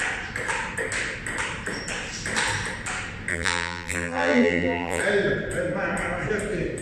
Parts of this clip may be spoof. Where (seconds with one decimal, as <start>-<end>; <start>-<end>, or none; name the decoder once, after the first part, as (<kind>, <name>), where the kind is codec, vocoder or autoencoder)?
3.3-5.0 (vocoder, BigVGAN v2)